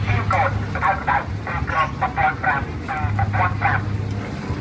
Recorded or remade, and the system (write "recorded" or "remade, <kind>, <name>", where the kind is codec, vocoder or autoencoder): recorded